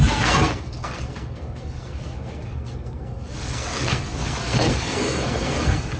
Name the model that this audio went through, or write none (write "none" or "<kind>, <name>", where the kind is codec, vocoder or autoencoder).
codec, SNAC